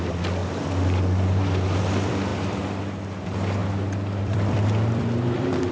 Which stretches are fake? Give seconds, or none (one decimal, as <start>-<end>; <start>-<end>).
0.0-0.4; 1.8-3.6; 4.2-5.7